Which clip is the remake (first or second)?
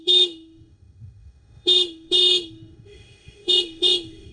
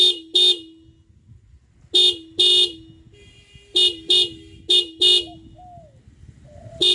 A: first